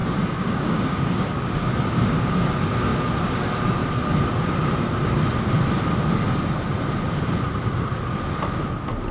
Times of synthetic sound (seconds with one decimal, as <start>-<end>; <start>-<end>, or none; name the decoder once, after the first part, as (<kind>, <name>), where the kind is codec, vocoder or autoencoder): 0.0-2.5 (codec, DAC)